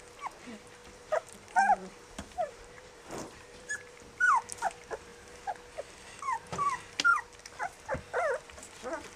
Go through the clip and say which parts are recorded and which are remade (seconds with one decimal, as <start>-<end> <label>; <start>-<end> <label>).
0.0-0.8 recorded; 0.8-4.0 remade; 4.0-9.2 recorded